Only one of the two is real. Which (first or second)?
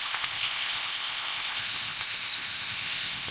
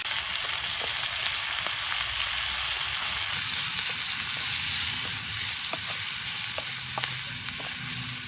second